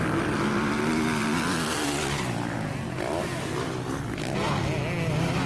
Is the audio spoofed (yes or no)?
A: no